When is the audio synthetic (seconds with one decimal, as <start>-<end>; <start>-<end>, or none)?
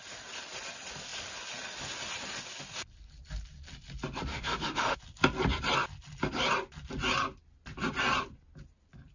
4.3-5.0